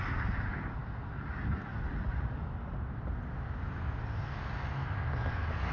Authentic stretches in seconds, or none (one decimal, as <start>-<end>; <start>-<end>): 0.0-5.7